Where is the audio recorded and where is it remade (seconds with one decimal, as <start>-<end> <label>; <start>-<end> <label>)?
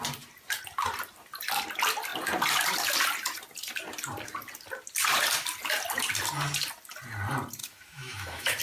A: 0.0-7.6 recorded; 7.6-8.6 remade